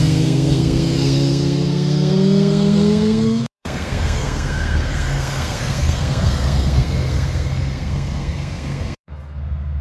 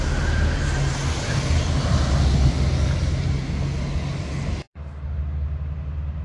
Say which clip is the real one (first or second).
second